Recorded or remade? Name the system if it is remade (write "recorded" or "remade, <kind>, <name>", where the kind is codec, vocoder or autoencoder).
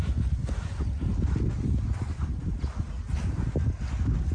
recorded